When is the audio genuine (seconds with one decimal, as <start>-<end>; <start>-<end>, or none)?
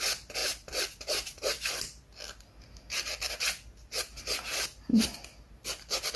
0.0-4.1; 5.1-6.2